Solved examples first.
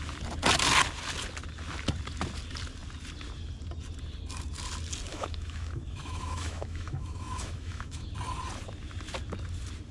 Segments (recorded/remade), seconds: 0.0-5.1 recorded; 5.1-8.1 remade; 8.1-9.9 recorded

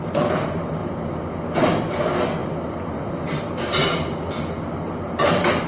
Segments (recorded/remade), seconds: 0.0-5.7 remade

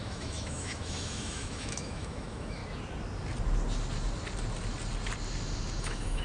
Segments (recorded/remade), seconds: 0.0-2.6 remade; 2.6-5.8 recorded; 5.8-6.2 remade

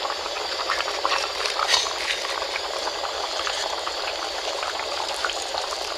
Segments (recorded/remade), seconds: 0.0-1.8 remade; 1.8-2.4 recorded; 2.4-6.0 remade

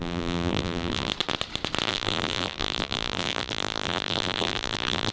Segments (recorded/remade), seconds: 0.0-1.1 remade; 1.1-1.9 recorded; 1.9-5.1 remade

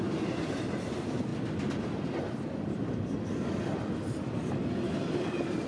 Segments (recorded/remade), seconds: 0.0-5.7 recorded